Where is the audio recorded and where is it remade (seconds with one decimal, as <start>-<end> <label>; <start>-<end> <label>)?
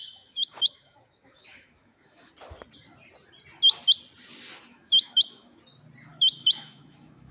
0.0-2.3 remade; 2.3-4.7 recorded; 4.7-5.6 remade; 5.6-6.1 recorded; 6.1-7.3 remade